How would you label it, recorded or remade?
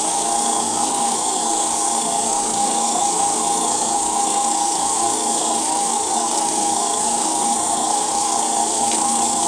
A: remade